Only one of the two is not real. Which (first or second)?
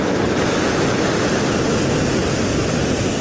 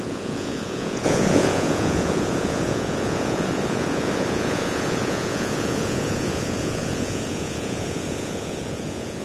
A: second